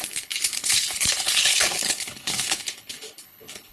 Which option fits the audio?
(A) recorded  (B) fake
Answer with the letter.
B